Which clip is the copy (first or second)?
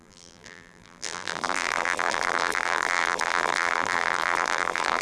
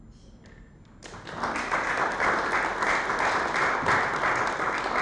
first